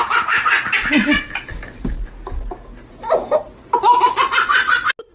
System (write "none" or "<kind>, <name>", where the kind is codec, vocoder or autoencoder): none